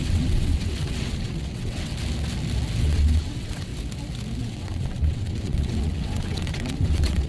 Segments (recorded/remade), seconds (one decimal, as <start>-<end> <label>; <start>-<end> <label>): 0.0-1.9 remade; 1.9-2.8 recorded; 2.8-3.7 remade; 3.7-4.4 recorded; 4.4-7.3 remade